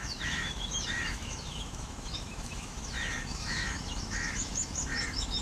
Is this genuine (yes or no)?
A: no